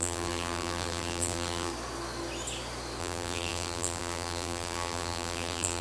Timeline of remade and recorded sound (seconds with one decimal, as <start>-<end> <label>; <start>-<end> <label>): 0.0-1.7 remade; 1.7-3.0 recorded; 3.0-5.8 remade